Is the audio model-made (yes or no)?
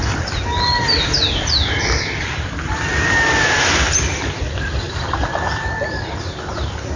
no